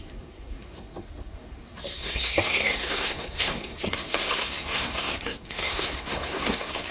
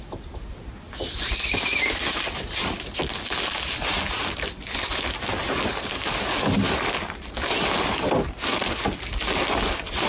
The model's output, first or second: first